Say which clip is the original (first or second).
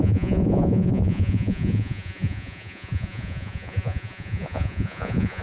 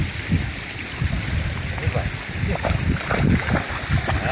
second